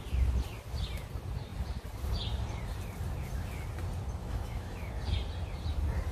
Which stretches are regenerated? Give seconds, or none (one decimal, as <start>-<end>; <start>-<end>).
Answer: 4.2-4.9